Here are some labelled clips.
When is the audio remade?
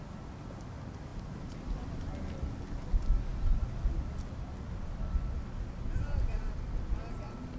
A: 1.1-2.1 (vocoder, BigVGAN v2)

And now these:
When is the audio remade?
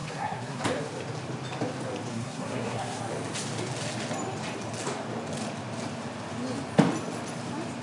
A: 0.0-0.6 (codec, SNAC); 2.1-3.0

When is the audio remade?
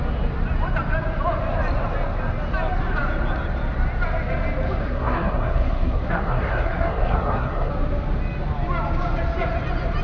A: 4.8-7.7 (codec, SNAC)